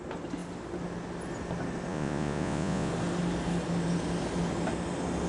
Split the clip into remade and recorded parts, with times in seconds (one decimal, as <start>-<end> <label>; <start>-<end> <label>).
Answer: 0.0-1.9 recorded; 1.9-2.9 remade; 2.9-5.3 recorded